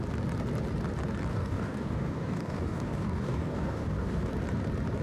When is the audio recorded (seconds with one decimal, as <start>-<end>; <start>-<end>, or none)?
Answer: 0.0-1.3; 4.3-5.0